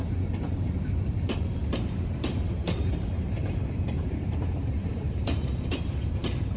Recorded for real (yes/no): no